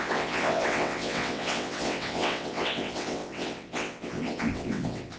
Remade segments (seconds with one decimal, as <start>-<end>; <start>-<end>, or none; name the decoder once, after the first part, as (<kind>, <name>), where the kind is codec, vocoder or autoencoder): 0.0-5.2 (vocoder, WaveNeXt)